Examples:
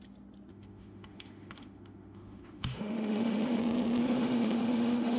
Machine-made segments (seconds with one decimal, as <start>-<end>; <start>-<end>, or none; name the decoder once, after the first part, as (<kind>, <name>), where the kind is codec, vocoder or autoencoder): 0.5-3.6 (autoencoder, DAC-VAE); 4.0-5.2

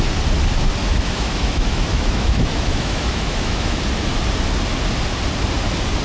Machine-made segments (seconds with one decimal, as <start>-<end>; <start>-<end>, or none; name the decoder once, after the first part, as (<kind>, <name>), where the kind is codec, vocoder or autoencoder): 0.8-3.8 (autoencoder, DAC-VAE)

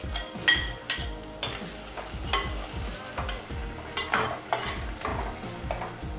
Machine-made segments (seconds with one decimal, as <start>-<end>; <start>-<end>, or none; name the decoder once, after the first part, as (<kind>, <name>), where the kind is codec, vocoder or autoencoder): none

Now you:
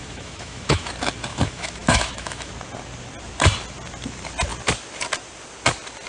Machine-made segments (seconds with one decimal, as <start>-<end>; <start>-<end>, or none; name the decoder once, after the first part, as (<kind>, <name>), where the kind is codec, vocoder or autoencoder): 0.0-0.9 (autoencoder, DAC-VAE); 1.3-2.5

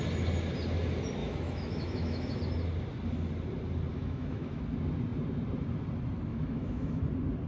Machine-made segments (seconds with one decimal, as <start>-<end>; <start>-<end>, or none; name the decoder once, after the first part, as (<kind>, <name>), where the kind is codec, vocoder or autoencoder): 1.2-2.4 (autoencoder, DAC-VAE); 3.9-4.6; 6.3-7.0

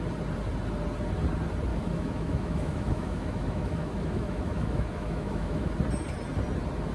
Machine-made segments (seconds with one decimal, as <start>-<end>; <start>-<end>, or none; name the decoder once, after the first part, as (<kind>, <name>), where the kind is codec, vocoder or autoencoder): 1.7-5.7 (autoencoder, DAC-VAE)